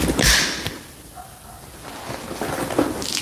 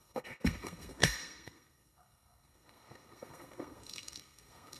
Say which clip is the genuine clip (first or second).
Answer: first